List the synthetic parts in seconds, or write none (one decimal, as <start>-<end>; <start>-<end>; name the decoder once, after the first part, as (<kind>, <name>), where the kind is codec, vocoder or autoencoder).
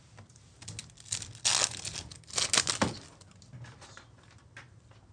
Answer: none